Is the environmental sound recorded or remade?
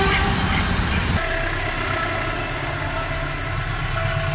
recorded